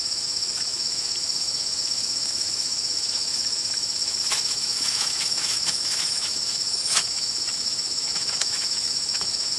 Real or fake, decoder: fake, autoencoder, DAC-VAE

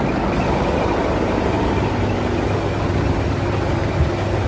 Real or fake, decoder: real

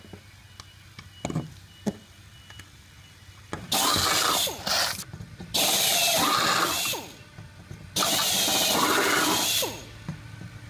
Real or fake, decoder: real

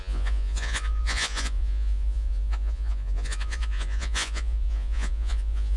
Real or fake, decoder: fake, vocoder, Vocos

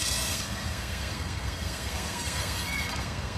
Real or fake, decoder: fake, codec, SNAC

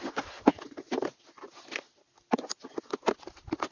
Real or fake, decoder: real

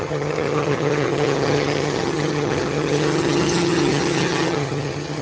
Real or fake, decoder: fake, vocoder, HiFi-GAN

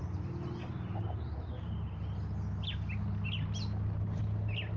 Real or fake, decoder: real